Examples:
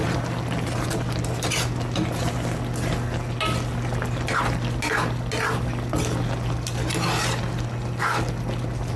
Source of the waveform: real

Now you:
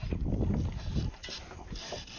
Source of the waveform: real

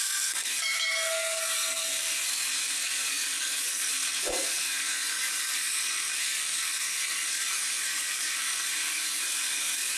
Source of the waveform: fake